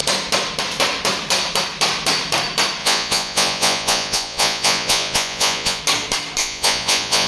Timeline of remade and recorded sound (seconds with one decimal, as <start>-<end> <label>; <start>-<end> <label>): 0.0-2.8 recorded; 2.8-5.8 remade; 5.8-6.4 recorded; 6.4-7.3 remade